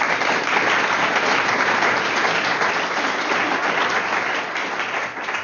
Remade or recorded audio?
recorded